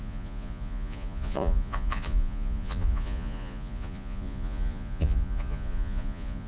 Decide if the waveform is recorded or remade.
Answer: remade